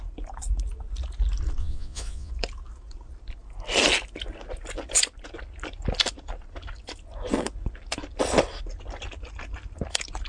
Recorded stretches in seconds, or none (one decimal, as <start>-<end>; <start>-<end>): 0.0-1.6; 2.3-10.3